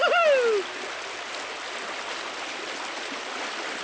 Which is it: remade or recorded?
recorded